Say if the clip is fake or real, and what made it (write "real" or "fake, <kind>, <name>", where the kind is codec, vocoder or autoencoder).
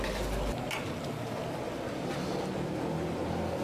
real